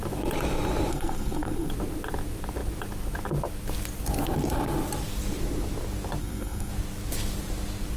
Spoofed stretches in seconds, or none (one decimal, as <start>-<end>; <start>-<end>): 0.9-1.7; 6.2-6.7